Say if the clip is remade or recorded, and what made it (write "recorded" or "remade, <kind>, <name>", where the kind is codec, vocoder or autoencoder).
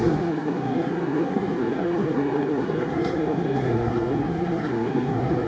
remade, codec, SNAC